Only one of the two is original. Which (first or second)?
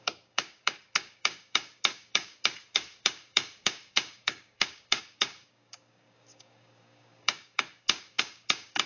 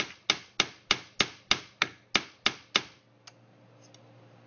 second